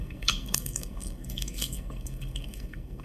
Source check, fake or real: fake